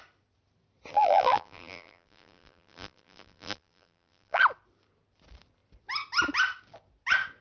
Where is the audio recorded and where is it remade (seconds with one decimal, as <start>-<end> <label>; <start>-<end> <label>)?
0.0-0.9 recorded; 0.9-4.4 remade; 4.4-7.4 recorded